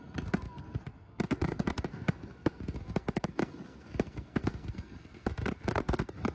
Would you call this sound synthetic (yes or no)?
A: yes